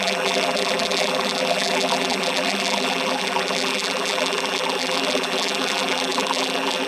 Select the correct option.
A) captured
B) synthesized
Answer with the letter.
B